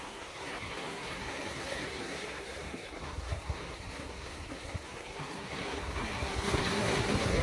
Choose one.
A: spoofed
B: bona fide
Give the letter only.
A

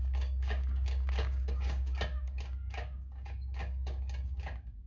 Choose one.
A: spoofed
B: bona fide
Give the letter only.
A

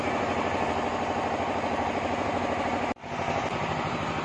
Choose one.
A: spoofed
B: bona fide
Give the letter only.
B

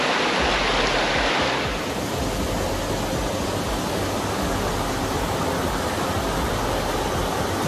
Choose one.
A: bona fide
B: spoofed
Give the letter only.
A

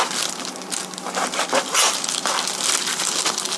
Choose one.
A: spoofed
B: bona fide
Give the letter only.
B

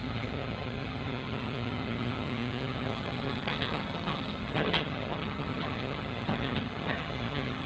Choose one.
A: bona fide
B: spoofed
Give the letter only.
B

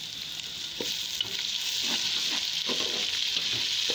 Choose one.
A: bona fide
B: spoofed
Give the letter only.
A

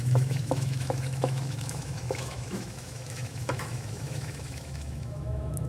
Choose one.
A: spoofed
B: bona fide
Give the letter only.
A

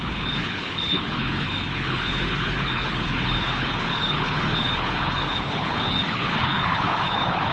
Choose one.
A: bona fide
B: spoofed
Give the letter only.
B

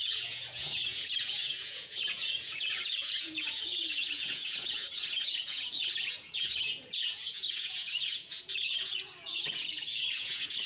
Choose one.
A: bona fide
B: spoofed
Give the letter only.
B